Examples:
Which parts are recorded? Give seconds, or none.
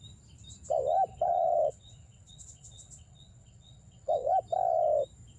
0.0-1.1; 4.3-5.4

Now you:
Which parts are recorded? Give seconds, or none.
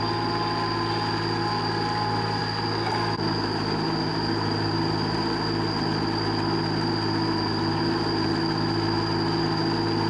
0.0-10.1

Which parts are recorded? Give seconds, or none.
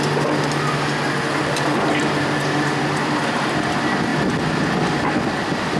0.0-5.8